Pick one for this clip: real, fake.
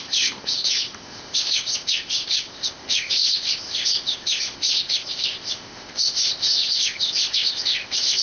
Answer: fake